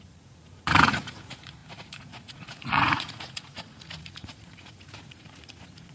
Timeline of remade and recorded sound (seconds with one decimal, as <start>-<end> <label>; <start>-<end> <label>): 0.0-5.9 remade

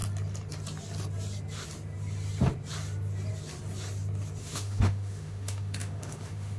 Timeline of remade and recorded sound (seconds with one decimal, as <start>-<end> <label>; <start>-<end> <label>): 0.0-4.4 recorded; 4.4-6.6 remade

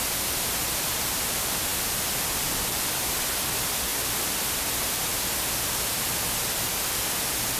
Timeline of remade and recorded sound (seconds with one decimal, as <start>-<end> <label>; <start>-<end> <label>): 0.0-3.9 remade; 3.9-4.5 recorded; 4.5-5.1 remade; 5.1-7.6 recorded

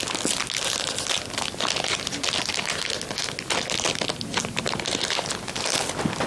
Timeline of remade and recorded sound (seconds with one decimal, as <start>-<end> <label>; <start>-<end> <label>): 0.0-6.3 recorded

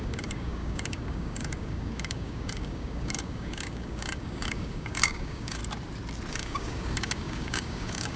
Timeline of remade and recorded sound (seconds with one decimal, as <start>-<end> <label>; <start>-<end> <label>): 0.0-5.6 remade; 5.6-6.3 recorded; 6.3-8.2 remade

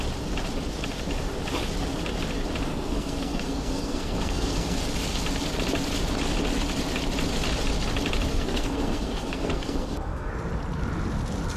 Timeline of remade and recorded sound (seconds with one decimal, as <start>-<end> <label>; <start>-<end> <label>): 0.0-2.7 recorded; 2.7-4.8 remade; 4.8-8.3 recorded; 8.3-10.3 remade; 10.3-11.6 recorded

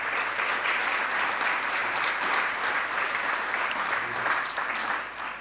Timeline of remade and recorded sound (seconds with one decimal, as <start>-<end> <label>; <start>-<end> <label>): 0.0-1.8 recorded; 1.8-5.0 remade; 5.0-5.4 recorded

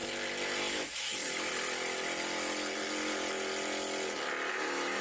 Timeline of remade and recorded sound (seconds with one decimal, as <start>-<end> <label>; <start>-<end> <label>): 0.0-0.7 recorded; 0.7-1.5 remade; 1.5-4.5 recorded; 4.5-5.0 remade